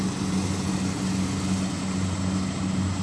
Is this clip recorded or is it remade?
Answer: recorded